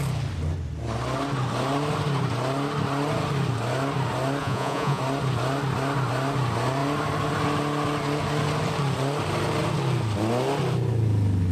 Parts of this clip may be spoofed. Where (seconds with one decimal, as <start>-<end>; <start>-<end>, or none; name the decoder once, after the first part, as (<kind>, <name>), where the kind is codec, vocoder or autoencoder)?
4.4-5.0 (vocoder, Vocos)